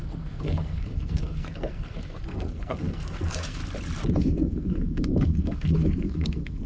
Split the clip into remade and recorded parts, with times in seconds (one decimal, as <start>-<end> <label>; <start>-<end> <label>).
0.0-3.6 remade; 3.6-4.1 recorded; 4.1-6.7 remade

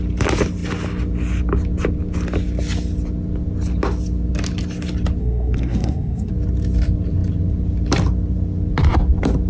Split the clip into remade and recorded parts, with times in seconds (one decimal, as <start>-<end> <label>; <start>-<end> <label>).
0.0-5.2 recorded; 5.2-6.3 remade; 6.3-9.5 recorded

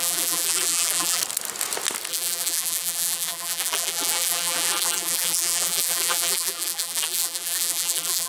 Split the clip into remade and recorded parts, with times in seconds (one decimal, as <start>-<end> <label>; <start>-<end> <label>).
0.0-1.2 remade; 1.2-2.1 recorded; 2.1-8.3 remade

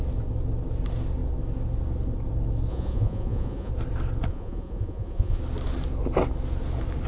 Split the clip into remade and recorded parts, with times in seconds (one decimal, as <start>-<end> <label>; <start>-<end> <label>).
0.0-2.7 recorded; 2.7-3.7 remade; 3.7-4.3 recorded; 4.3-5.4 remade; 5.4-7.1 recorded